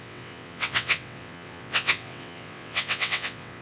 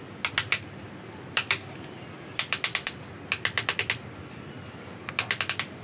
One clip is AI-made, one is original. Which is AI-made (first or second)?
first